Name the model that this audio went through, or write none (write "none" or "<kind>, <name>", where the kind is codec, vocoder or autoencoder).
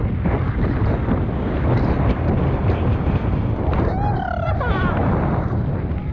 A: none